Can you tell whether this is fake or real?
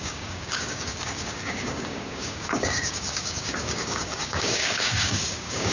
fake